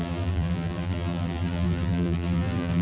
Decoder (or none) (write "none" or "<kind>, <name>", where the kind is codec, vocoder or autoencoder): vocoder, BigVGAN v2